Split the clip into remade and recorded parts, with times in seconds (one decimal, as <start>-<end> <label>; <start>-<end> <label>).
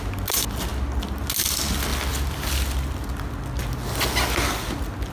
0.0-5.1 recorded